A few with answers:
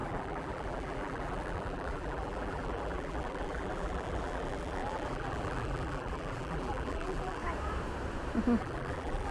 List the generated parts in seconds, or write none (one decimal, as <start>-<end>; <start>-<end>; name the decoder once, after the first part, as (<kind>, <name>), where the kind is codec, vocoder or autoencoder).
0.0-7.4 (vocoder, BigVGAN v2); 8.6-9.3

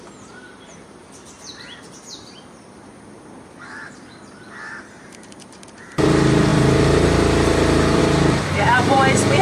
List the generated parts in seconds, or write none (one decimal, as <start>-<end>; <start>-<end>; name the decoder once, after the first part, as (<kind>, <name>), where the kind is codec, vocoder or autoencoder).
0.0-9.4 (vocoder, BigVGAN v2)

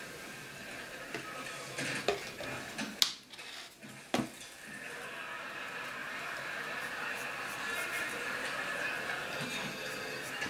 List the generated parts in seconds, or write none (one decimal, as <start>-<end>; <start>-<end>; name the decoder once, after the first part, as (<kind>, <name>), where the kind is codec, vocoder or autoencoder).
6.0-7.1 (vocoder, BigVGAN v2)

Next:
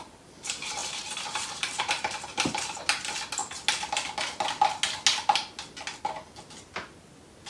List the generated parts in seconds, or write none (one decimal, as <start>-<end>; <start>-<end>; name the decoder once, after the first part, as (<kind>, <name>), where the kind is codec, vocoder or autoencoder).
0.8-2.8 (vocoder, BigVGAN v2)

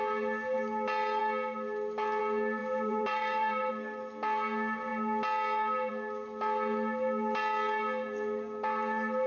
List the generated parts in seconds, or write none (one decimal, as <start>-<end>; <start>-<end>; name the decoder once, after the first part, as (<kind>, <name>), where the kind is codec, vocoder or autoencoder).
2.6-3.7 (vocoder, BigVGAN v2)